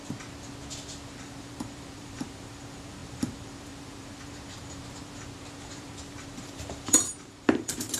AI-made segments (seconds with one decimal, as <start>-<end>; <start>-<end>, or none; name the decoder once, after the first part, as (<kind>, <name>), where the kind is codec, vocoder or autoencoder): 1.2-8.0 (vocoder, BigVGAN v2)